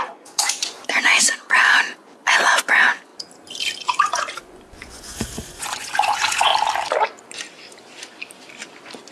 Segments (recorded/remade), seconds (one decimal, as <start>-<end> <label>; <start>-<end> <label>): 0.0-3.1 remade; 3.1-3.8 recorded; 3.8-6.5 remade; 6.5-9.1 recorded